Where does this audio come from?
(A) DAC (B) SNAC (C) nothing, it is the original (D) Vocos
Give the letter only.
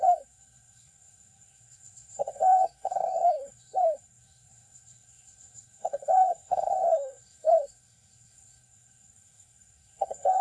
B